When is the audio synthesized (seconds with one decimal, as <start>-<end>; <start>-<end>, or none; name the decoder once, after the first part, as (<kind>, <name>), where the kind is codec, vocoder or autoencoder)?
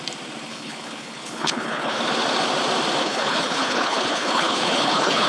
0.5-2.0 (codec, HILCodec); 3.0-5.3